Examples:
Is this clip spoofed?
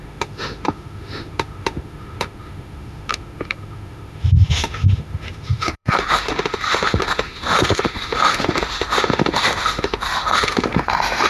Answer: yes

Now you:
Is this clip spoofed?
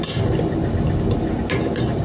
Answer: no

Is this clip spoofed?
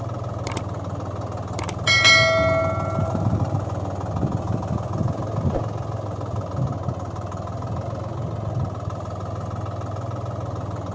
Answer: no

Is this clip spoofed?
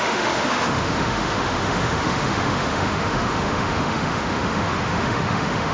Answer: yes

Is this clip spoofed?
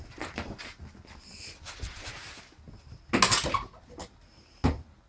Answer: no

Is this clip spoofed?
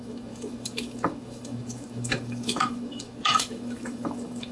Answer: yes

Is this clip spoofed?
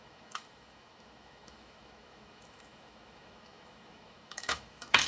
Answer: yes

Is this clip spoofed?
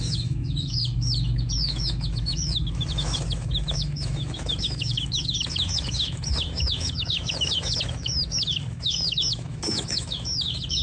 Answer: yes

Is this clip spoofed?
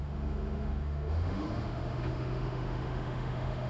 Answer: yes